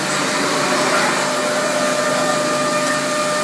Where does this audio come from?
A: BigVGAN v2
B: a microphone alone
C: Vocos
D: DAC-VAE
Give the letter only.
B